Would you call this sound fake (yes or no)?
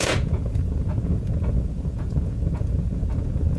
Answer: yes